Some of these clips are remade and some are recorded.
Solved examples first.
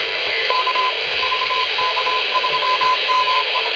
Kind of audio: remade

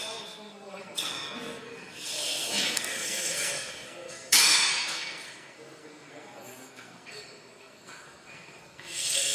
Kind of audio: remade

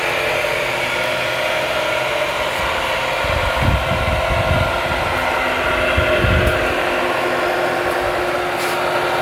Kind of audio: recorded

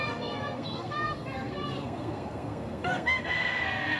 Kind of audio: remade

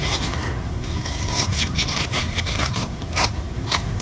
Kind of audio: remade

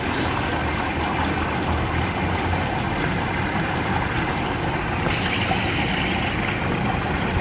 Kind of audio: recorded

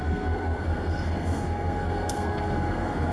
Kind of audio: remade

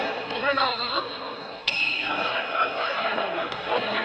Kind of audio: remade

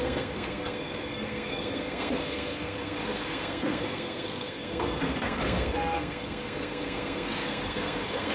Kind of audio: remade